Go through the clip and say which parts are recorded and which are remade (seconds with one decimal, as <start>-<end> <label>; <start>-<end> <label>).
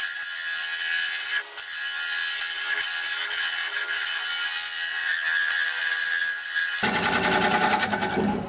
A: 0.0-8.5 recorded